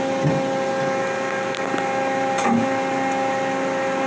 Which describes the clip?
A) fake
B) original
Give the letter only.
B